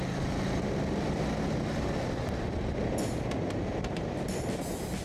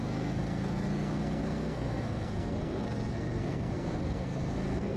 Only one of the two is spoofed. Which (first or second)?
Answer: second